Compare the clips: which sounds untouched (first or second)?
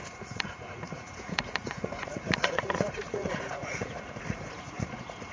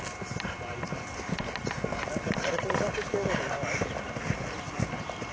second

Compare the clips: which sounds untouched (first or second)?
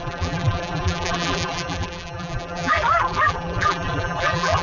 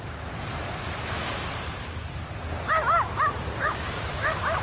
second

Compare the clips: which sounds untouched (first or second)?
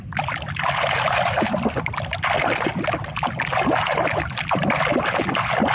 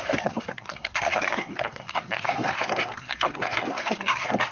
first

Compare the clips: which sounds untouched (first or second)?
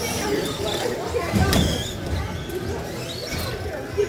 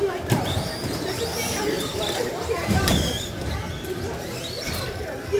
first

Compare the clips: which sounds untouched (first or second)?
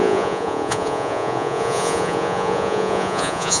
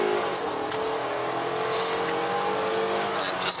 second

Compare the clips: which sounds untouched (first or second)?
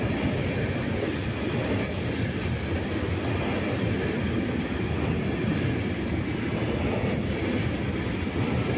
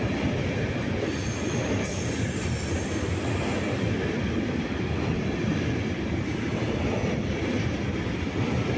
first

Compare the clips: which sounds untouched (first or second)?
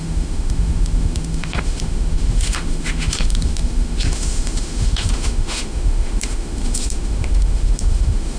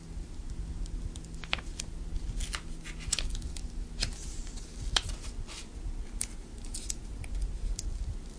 second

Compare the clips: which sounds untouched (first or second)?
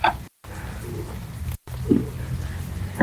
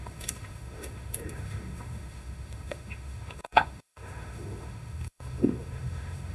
first